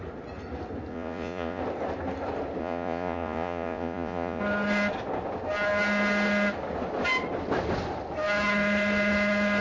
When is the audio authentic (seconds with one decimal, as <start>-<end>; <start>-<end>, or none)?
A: 0.0-0.9; 1.6-2.6; 4.4-9.6